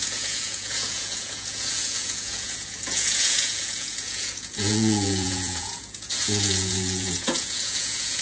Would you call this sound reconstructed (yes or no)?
yes